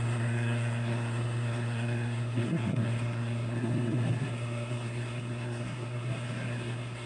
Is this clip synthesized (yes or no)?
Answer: yes